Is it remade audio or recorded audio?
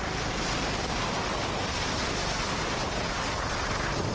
recorded